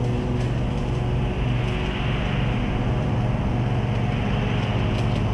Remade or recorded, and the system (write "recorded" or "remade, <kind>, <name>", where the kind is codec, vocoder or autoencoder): recorded